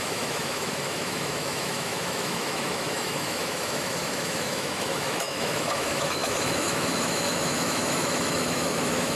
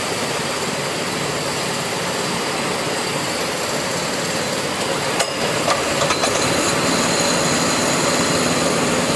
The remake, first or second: first